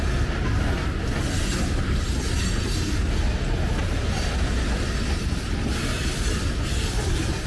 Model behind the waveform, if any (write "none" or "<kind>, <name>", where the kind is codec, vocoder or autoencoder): none